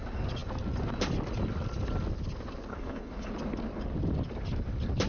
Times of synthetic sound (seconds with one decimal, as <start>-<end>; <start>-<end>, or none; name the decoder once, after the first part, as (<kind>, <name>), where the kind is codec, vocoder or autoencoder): 2.7-3.3 (codec, HILCodec)